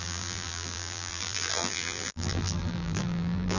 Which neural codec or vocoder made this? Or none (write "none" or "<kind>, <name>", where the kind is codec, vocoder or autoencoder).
vocoder, BigVGAN v2